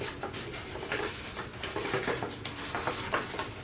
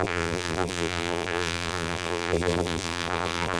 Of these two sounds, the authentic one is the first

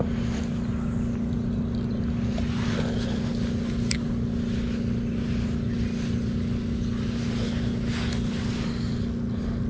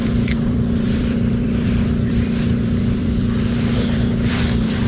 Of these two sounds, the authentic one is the first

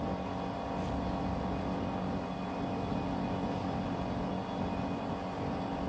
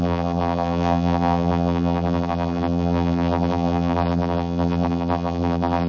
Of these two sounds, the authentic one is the first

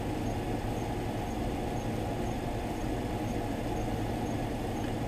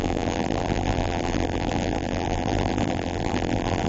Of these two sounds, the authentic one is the first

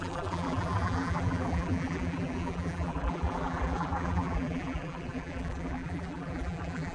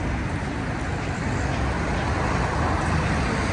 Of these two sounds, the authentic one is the second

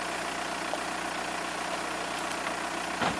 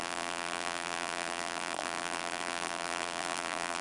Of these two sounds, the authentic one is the first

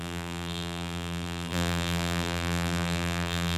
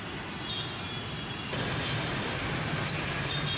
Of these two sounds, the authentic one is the second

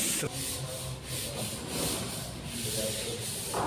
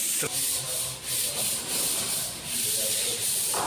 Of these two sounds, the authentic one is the first